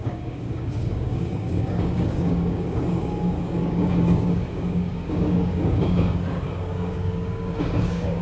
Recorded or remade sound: remade